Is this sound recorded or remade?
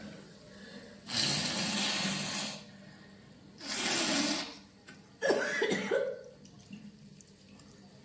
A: recorded